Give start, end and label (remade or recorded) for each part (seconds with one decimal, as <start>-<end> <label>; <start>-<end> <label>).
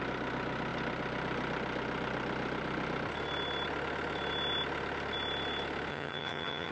0.0-5.9 recorded; 5.9-6.7 remade